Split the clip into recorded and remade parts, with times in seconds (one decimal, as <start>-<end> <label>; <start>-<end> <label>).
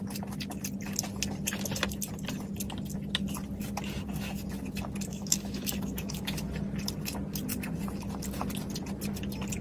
0.0-5.1 recorded; 5.1-6.4 remade; 6.4-9.6 recorded